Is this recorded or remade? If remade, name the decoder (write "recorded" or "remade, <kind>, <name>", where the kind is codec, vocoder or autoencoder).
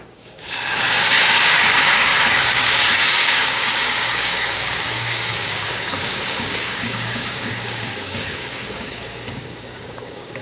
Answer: remade, codec, DAC